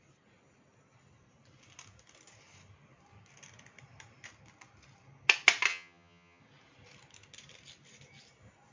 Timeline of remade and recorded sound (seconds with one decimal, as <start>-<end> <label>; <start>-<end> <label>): 0.0-5.7 recorded; 5.7-6.4 remade; 6.4-8.7 recorded